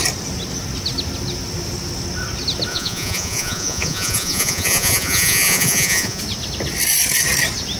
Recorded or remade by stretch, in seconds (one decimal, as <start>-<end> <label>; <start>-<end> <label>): 0.0-2.7 recorded; 2.7-6.2 remade; 6.2-7.8 recorded